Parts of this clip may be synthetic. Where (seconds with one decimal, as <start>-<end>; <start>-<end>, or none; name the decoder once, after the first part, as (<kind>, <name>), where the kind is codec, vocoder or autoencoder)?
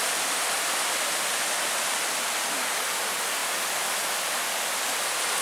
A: none